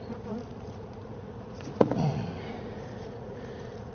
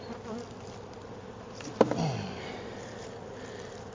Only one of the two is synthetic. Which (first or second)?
first